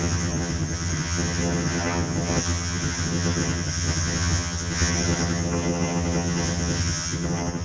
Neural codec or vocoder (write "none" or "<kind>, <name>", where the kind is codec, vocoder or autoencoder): vocoder, HiFi-GAN